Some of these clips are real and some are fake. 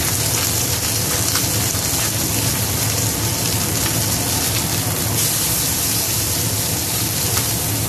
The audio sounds real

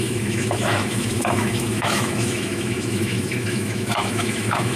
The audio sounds fake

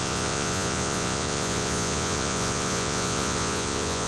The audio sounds fake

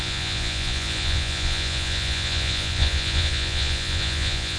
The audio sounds fake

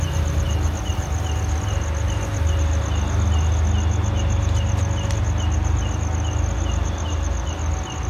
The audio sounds real